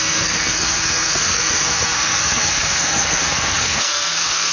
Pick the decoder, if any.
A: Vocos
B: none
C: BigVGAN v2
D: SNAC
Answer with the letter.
D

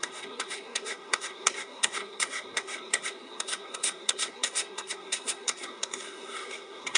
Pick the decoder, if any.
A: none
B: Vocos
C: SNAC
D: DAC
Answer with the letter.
C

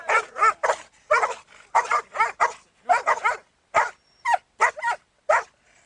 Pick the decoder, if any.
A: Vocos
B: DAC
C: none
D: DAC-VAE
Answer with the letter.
C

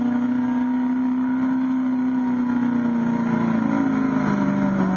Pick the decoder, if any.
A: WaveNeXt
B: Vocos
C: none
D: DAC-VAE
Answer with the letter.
C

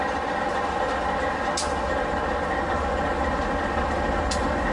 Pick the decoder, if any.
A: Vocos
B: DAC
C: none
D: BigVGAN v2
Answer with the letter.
C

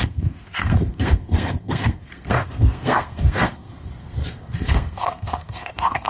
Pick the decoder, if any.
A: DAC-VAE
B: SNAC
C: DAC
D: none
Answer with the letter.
B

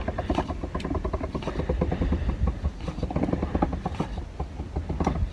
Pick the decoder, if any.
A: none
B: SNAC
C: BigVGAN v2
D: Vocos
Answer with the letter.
A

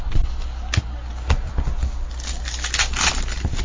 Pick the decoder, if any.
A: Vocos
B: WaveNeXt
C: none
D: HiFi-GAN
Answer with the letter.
C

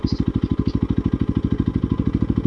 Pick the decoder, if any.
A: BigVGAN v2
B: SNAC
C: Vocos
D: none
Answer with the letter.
D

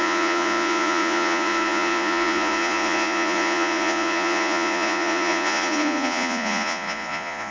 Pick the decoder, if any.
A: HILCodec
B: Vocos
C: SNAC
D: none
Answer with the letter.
B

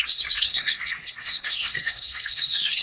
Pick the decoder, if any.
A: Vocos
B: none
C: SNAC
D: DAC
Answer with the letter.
C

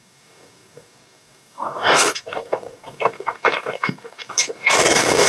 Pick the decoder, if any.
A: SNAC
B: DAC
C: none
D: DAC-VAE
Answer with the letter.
B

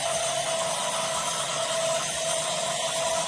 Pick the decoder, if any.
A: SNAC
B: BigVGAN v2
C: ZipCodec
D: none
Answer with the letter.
D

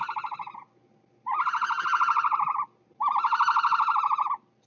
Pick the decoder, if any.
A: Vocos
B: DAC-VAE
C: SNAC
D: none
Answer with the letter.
D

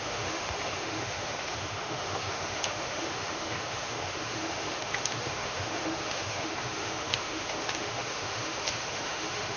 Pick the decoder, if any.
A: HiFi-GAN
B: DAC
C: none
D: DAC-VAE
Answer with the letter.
D